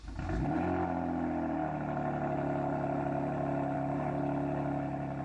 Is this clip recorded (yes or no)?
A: yes